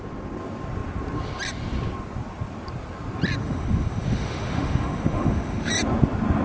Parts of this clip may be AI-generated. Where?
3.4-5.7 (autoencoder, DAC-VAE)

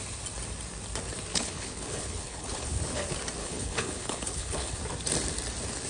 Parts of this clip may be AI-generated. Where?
1.3-3.0 (codec, HILCodec); 3.4-4.8

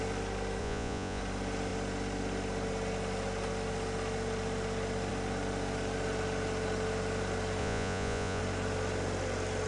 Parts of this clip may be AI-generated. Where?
0.6-1.2 (vocoder, Vocos); 7.6-8.4

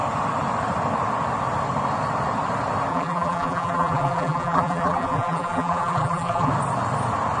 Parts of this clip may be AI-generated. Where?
2.9-6.5 (vocoder, BigVGAN v2)

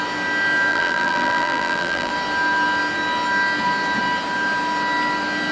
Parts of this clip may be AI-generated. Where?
0.7-2.1 (vocoder, BigVGAN v2)